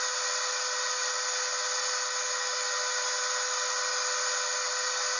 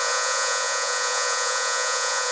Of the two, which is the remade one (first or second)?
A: second